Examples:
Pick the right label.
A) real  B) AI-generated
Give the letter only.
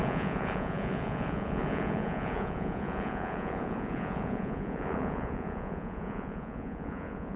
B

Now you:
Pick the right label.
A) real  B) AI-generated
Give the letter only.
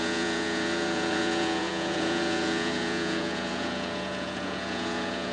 B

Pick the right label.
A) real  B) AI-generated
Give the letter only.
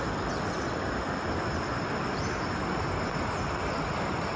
A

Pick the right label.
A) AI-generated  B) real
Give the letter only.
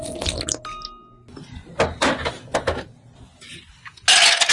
B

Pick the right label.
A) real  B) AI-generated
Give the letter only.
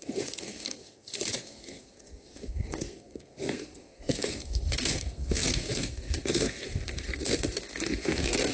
B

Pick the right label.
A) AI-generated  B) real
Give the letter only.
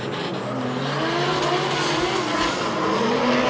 B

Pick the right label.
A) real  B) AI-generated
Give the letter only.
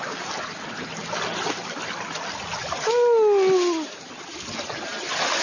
A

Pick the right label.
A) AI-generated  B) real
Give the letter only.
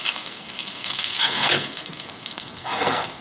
A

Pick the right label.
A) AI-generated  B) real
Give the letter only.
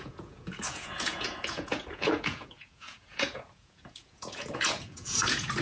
A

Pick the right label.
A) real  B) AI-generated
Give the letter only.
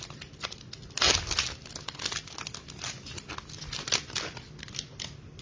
A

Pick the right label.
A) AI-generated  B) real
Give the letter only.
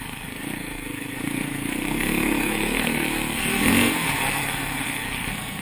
A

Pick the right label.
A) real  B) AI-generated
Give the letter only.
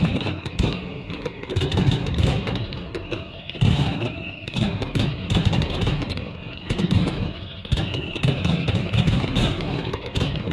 B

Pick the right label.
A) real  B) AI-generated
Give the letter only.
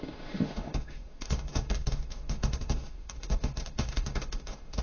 B